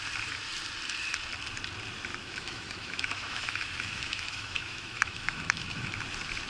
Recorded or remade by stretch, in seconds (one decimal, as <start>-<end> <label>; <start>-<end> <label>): 0.0-2.1 recorded; 2.1-6.0 remade; 6.0-6.5 recorded